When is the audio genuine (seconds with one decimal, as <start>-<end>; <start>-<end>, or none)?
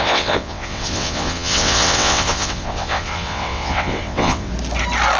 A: 4.5-5.2